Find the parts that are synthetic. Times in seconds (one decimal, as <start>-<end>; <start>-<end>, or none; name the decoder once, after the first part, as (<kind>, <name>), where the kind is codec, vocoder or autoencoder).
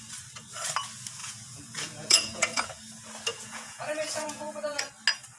1.2-2.7 (vocoder, Vocos); 3.3-4.9